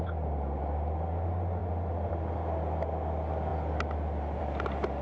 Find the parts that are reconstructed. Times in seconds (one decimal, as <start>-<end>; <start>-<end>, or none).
none